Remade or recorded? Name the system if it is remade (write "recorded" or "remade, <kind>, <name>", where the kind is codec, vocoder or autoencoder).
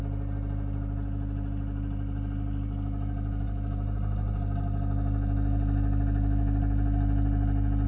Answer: recorded